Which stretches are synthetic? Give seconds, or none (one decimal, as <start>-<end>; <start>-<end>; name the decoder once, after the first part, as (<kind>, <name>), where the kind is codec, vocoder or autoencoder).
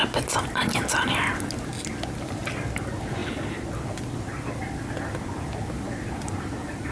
none